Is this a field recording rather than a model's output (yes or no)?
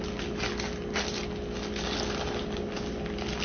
yes